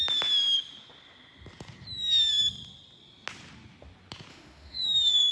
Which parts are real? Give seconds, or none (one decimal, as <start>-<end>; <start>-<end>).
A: 0.0-4.3